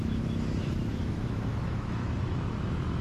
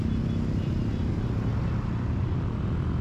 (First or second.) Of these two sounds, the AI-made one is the first